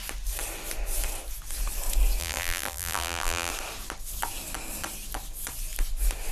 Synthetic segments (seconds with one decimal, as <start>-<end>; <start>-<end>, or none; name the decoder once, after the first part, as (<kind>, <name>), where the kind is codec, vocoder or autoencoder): 2.2-3.5 (vocoder, BigVGAN v2)